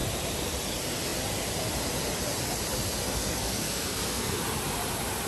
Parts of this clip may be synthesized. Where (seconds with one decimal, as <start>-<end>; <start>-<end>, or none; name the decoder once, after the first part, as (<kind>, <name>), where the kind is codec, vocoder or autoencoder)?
3.0-4.4 (codec, SNAC)